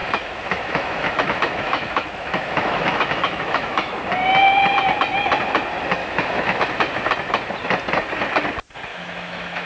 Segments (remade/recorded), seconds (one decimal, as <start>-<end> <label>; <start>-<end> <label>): 0.0-4.0 remade; 4.0-6.0 recorded; 6.0-6.7 remade; 6.7-8.9 recorded; 8.9-9.7 remade

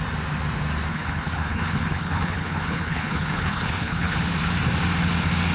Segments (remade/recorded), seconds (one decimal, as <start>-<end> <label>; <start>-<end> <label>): 0.0-0.9 recorded; 0.9-4.2 remade; 4.2-5.5 recorded

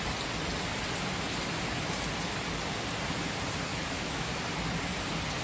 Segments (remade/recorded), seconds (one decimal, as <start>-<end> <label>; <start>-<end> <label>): 0.0-3.7 recorded; 3.7-4.3 remade; 4.3-5.4 recorded

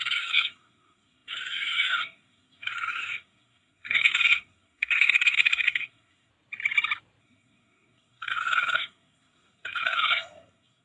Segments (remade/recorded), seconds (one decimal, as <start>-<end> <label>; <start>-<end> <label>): 0.0-6.3 remade; 6.3-7.2 recorded; 7.2-10.8 remade

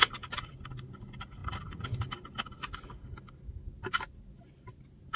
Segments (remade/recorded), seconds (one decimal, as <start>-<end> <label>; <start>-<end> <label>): 0.0-5.2 recorded

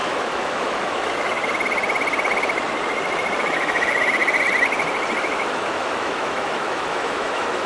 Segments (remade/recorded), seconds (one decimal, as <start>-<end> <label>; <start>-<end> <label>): 0.0-1.4 remade; 1.4-3.4 recorded; 3.4-4.2 remade; 4.2-5.2 recorded; 5.2-7.7 remade

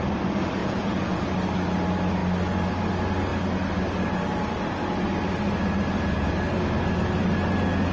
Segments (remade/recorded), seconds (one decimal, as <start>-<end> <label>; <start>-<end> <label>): 0.0-0.6 recorded; 0.6-1.2 remade; 1.2-7.9 recorded